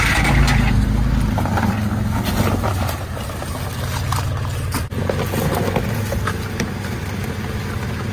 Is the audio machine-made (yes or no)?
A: no